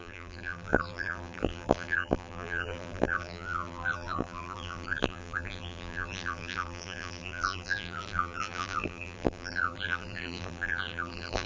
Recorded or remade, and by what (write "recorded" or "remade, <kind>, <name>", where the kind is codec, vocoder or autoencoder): remade, vocoder, BigVGAN v2